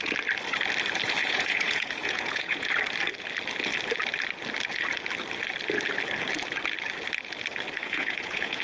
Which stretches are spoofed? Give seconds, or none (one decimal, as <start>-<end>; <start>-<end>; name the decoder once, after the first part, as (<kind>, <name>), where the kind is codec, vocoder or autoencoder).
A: 1.2-2.7 (vocoder, Vocos); 7.8-8.6